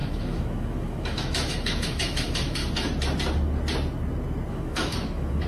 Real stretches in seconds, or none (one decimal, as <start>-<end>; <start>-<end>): 2.6-4.5